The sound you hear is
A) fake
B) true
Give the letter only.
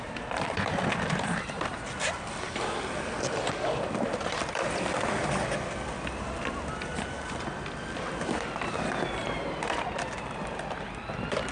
A